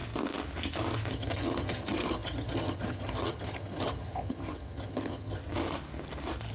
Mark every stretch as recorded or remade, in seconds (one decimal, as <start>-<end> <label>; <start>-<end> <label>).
0.0-1.1 recorded; 1.1-5.4 remade; 5.4-6.5 recorded